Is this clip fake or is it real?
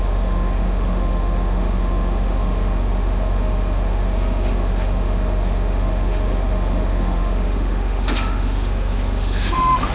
fake